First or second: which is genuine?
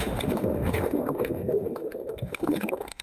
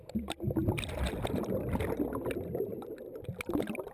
second